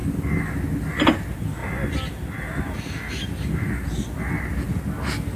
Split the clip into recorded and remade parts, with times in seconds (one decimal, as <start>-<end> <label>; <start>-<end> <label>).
0.0-5.4 recorded